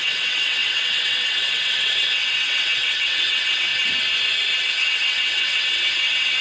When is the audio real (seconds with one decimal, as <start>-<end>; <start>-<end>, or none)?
3.7-4.7